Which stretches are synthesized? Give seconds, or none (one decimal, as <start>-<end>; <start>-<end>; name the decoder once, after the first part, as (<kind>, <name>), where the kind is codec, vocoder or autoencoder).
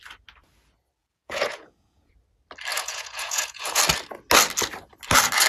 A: 1.0-2.1 (vocoder, Vocos); 2.7-3.8